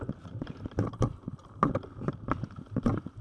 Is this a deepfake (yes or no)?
no